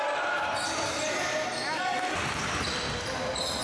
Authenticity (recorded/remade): recorded